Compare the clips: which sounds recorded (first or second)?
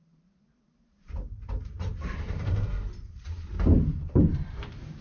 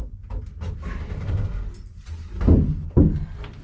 second